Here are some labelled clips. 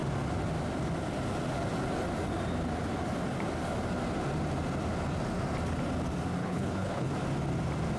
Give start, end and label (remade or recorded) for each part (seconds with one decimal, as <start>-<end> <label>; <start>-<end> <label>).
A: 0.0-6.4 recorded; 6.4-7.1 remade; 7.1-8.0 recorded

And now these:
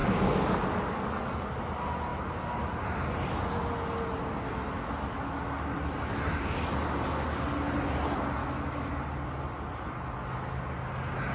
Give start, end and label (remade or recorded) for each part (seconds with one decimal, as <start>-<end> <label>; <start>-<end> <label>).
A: 0.0-8.4 recorded; 8.4-8.9 remade; 8.9-11.3 recorded

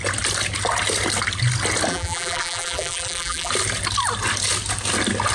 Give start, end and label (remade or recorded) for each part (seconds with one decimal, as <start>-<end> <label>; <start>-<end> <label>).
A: 0.0-1.9 recorded; 1.9-3.5 remade; 3.5-5.3 recorded